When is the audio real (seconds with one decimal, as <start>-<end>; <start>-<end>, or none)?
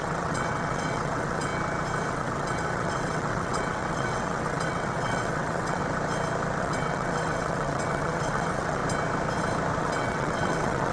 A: 1.5-2.1; 5.8-6.6; 8.8-9.8